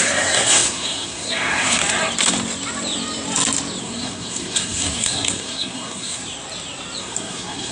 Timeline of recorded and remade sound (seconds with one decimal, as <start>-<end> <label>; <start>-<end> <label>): 0.0-1.8 remade; 1.8-3.8 recorded; 3.8-6.2 remade; 6.2-7.0 recorded; 7.0-7.7 remade